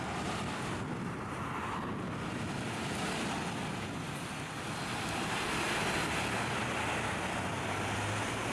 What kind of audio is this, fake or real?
real